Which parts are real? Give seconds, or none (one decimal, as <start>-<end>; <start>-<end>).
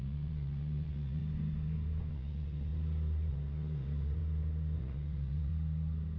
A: 1.2-2.1; 2.7-3.3; 4.2-4.8; 5.5-6.2